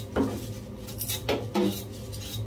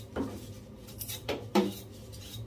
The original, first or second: first